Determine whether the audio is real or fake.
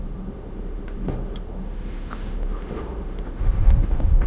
fake